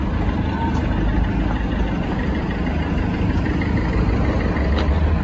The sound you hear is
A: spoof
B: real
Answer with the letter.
B